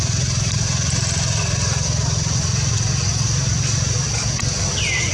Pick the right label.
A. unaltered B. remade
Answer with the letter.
A